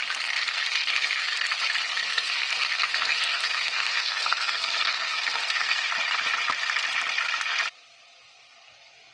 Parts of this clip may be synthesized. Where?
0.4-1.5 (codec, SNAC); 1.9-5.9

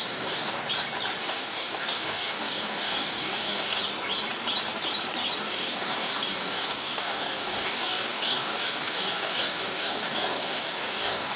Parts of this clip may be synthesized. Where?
0.0-0.6 (codec, DAC); 1.2-3.8; 5.4-11.4

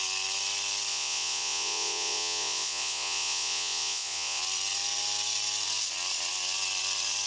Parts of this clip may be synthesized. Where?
0.9-4.4 (vocoder, Vocos)

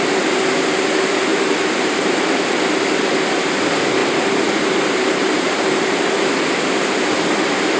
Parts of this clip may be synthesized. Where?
1.3-2.0 (vocoder, BigVGAN v2); 4.0-6.0

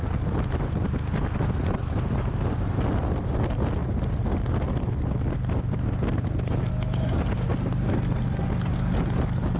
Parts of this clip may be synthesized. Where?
none

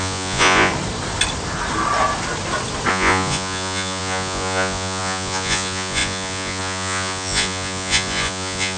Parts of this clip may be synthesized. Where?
0.0-0.7 (vocoder, Vocos); 2.9-8.8

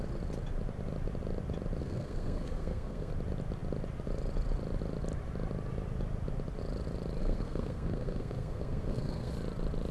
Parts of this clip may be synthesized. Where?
1.8-3.1 (codec, SNAC); 7.2-9.3

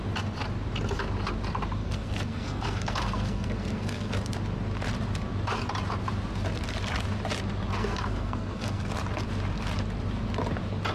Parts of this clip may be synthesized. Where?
1.8-4.1 (codec, SNAC); 7.7-8.9